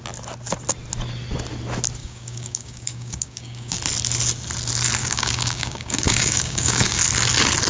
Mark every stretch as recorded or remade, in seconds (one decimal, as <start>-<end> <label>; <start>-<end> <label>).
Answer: 0.0-2.0 recorded; 2.0-3.8 remade; 3.8-5.0 recorded; 5.0-7.0 remade; 7.0-7.7 recorded